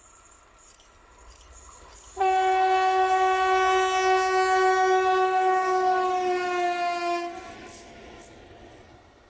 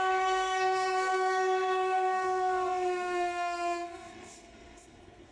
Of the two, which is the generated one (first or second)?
second